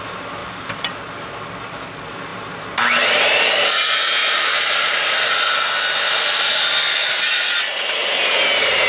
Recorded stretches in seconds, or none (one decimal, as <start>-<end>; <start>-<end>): 0.0-0.4; 1.4-4.2; 5.3-8.0